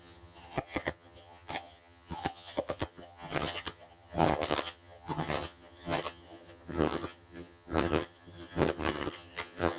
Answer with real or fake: fake